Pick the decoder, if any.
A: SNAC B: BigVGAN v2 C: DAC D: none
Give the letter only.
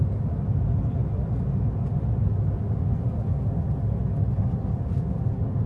D